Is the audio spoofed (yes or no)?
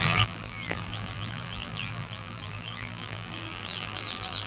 yes